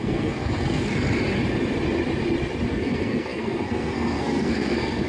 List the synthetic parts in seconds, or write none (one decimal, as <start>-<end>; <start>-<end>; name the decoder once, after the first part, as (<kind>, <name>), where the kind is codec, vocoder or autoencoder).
0.0-0.9 (codec, SNAC); 2.7-5.1